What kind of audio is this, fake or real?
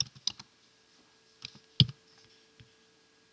real